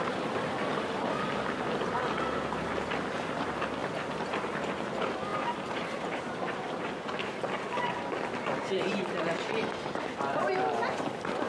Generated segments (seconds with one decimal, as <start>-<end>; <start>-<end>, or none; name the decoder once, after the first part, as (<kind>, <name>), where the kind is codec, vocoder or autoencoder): 5.3-6.6 (vocoder, BigVGAN v2)